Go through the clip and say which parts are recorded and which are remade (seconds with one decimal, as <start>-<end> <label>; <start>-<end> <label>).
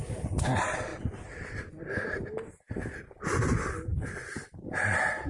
0.0-3.9 recorded; 3.9-4.7 remade; 4.7-5.3 recorded